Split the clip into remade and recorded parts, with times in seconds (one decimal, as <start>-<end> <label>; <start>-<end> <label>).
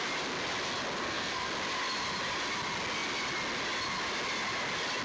0.0-1.0 recorded; 1.0-1.5 remade; 1.5-5.0 recorded